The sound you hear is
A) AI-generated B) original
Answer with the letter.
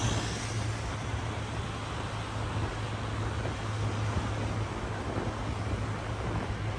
B